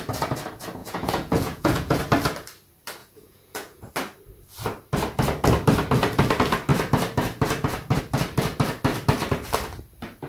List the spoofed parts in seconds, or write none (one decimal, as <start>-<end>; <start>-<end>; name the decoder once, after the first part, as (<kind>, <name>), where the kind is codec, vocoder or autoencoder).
0.8-2.0 (vocoder, Vocos); 3.0-3.9